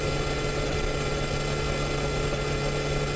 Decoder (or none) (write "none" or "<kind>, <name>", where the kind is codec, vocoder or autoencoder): none